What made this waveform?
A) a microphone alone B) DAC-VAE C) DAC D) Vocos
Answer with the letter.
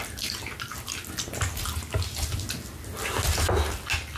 A